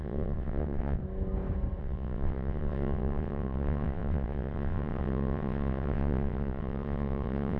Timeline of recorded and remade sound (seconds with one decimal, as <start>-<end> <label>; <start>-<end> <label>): 0.0-1.0 remade; 1.0-1.8 recorded; 1.8-7.6 remade